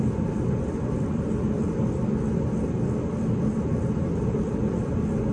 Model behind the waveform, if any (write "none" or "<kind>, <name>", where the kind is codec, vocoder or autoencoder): none